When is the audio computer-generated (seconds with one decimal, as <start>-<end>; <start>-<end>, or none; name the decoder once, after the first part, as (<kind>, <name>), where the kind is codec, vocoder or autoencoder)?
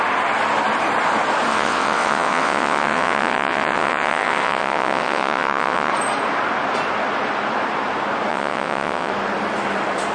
1.5-5.9 (vocoder, WaveNeXt); 8.3-9.1